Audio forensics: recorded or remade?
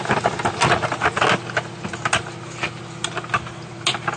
recorded